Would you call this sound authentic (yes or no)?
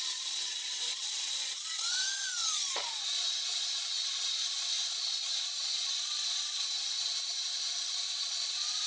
no